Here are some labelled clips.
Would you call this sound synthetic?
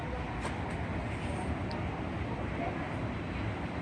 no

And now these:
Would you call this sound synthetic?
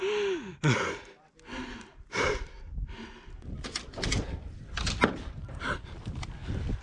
no